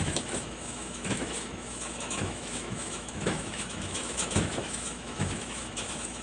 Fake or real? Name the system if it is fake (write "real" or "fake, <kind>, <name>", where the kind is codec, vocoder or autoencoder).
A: fake, autoencoder, DAC-VAE